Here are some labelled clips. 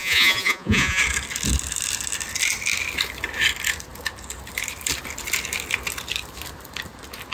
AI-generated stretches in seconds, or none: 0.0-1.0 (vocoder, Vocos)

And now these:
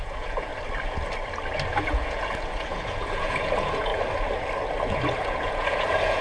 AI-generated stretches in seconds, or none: 0.0-0.5 (vocoder, Vocos); 1.8-3.9; 4.9-6.2